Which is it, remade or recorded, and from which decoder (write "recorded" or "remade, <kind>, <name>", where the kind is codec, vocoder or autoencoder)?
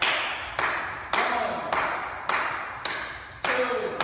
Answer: recorded